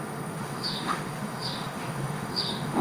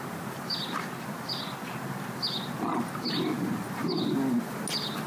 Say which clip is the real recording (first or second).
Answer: second